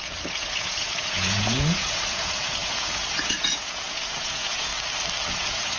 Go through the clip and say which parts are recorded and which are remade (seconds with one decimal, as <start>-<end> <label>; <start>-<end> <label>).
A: 0.0-4.7 remade; 4.7-5.3 recorded; 5.3-5.8 remade